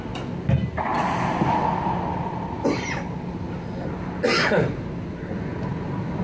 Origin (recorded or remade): recorded